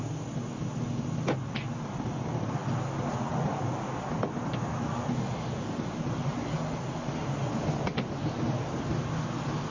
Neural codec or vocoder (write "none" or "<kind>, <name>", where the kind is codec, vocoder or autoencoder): none